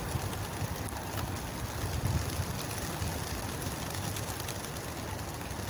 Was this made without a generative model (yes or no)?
yes